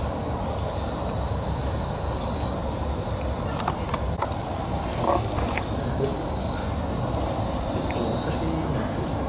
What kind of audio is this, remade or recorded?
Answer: recorded